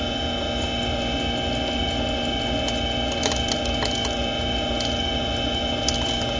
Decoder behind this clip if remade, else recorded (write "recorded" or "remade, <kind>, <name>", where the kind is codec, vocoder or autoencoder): recorded